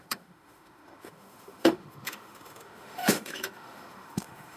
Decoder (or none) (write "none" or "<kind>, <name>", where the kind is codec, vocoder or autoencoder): autoencoder, DAC-VAE